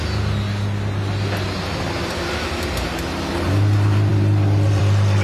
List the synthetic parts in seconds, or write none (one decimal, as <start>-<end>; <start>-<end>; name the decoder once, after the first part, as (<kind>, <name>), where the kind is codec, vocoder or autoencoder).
none